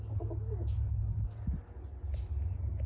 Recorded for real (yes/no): yes